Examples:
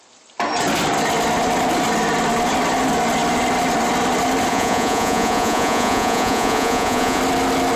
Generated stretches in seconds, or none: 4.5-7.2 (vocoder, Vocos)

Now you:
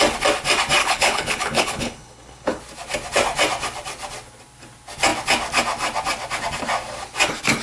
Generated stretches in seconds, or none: 0.8-2.6 (codec, HILCodec)

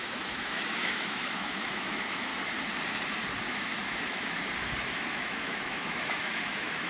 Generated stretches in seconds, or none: 0.0-2.3 (autoencoder, DAC-VAE); 3.4-4.4; 5.1-6.9

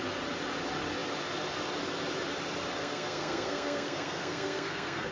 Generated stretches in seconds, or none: 2.8-5.1 (codec, SNAC)

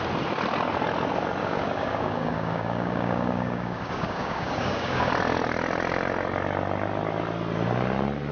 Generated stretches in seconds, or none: 1.4-5.1 (codec, DAC)

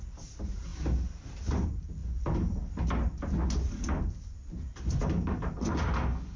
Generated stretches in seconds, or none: none